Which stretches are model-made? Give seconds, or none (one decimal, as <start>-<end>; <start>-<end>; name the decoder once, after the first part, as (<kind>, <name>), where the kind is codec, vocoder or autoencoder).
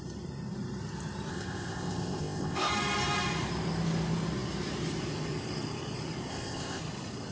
1.3-2.7 (codec, ZipCodec); 6.3-6.8